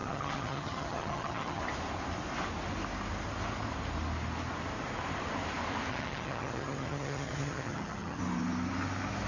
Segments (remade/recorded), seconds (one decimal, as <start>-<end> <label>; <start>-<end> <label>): 0.0-1.6 remade; 1.6-5.9 recorded; 5.9-8.2 remade; 8.2-9.3 recorded